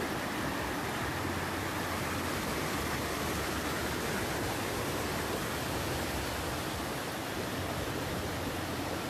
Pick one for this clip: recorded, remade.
recorded